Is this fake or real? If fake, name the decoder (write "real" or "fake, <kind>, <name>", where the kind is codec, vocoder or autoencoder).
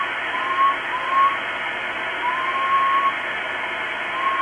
real